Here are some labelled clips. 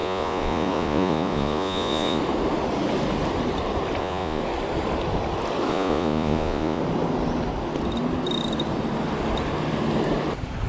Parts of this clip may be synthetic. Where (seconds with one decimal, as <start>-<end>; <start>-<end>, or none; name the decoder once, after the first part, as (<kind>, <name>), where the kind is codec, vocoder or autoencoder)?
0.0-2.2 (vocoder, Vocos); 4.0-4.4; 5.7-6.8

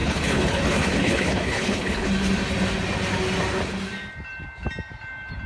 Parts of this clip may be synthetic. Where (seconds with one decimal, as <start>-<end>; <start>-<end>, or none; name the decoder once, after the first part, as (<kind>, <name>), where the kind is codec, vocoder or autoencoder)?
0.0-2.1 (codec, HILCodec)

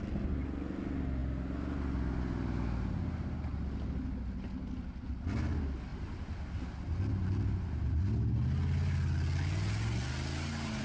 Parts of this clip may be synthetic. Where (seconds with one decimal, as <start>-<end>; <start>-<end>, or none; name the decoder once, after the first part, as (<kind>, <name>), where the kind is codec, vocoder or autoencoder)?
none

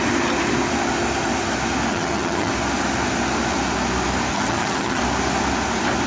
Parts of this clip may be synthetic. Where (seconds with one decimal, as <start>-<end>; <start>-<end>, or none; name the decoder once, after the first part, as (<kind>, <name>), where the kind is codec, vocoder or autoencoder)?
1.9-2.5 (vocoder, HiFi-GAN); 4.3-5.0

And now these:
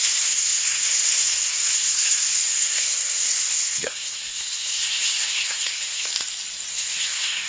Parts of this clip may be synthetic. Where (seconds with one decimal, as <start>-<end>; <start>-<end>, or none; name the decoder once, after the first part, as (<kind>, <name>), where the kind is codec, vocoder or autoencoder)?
0.0-6.1 (codec, SNAC); 6.7-7.5

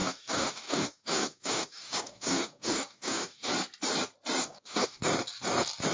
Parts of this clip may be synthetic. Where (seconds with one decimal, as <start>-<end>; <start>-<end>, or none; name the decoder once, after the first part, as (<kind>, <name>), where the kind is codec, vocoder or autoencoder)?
0.0-3.5 (codec, DAC); 4.4-5.0

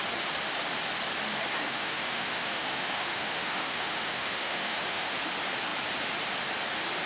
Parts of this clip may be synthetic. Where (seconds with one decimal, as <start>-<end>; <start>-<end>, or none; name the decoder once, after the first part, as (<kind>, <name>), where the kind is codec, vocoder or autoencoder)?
1.7-5.1 (autoencoder, DAC-VAE)

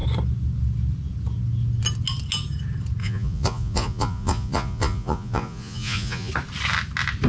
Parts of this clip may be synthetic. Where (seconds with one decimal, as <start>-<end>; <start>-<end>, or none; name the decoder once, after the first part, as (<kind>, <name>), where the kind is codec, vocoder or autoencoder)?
3.0-6.3 (vocoder, Vocos)